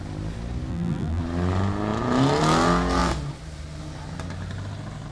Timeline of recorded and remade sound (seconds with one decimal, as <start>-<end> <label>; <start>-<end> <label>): 0.0-0.7 recorded; 0.7-1.2 remade; 1.2-5.1 recorded